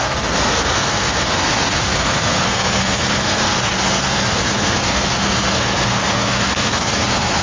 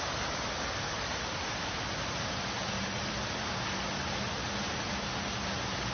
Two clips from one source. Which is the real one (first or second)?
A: second